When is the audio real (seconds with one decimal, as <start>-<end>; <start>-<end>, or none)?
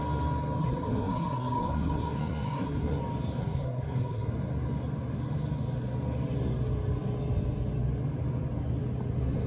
0.0-0.6; 3.0-3.4; 4.3-9.5